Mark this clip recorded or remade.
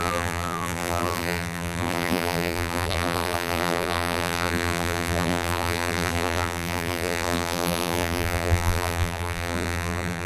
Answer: remade